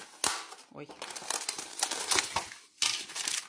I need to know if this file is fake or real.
real